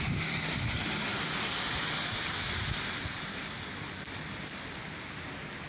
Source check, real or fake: real